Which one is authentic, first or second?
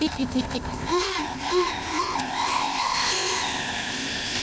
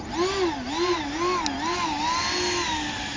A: second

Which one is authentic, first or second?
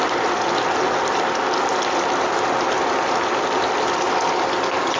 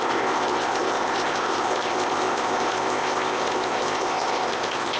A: first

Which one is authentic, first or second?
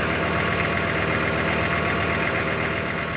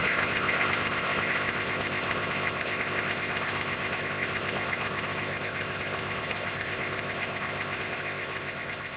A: first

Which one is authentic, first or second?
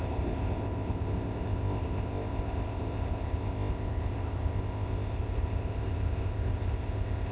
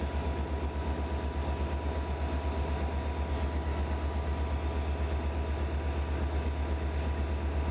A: second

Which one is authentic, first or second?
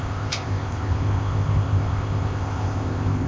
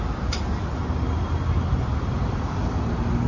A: second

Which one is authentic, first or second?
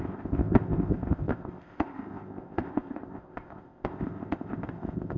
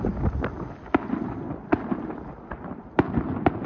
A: second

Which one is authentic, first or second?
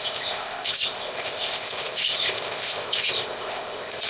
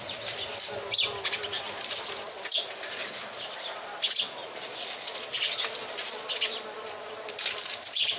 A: second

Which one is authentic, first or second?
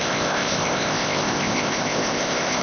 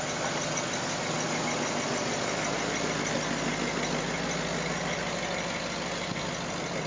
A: second